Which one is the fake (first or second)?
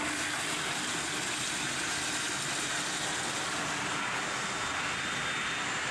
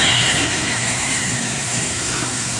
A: second